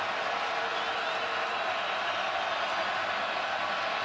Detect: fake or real real